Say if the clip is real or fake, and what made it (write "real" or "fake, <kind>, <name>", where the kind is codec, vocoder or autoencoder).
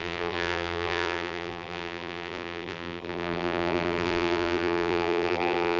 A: fake, vocoder, BigVGAN v2